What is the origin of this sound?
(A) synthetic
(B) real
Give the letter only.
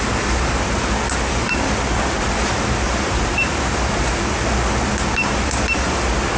B